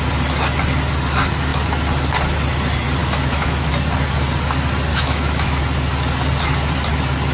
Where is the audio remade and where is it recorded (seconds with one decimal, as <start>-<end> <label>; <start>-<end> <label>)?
0.0-3.0 recorded; 3.0-3.7 remade; 3.7-4.9 recorded; 4.9-5.6 remade; 5.6-7.3 recorded